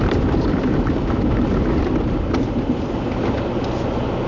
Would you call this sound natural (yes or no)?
yes